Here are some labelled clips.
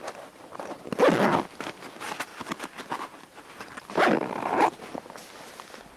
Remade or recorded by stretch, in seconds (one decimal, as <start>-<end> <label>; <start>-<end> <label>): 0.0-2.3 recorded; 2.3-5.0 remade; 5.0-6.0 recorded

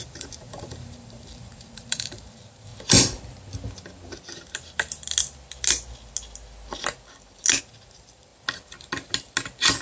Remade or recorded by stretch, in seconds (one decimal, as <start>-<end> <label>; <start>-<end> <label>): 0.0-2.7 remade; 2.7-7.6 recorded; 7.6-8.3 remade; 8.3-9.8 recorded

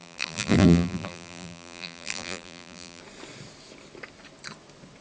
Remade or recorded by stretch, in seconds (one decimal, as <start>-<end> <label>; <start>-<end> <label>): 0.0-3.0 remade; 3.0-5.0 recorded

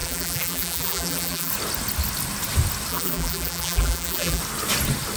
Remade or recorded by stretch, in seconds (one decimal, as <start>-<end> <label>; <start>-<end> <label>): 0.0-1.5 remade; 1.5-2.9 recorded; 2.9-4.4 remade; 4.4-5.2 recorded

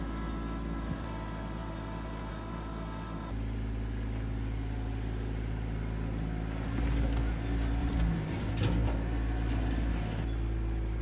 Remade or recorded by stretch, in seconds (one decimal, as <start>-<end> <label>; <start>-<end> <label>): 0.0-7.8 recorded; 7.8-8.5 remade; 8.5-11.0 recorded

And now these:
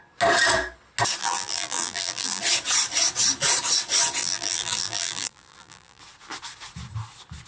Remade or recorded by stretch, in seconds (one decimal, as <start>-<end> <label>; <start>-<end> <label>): 0.0-1.2 recorded; 1.2-2.4 remade; 2.4-4.2 recorded; 4.2-6.0 remade; 6.0-7.5 recorded

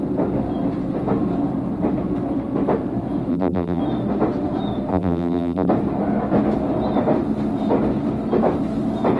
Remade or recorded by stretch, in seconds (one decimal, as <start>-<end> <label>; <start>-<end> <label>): 0.0-3.3 recorded; 3.3-3.8 remade; 3.8-4.9 recorded; 4.9-5.7 remade; 5.7-9.2 recorded

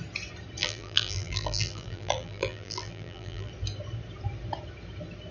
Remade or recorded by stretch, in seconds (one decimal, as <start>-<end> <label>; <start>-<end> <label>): 0.0-0.6 recorded; 0.6-3.5 remade; 3.5-5.3 recorded